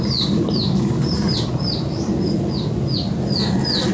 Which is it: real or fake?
real